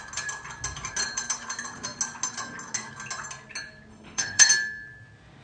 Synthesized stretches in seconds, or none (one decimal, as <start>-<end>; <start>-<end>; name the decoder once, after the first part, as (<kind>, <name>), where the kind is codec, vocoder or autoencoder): 3.9-4.5 (codec, HILCodec)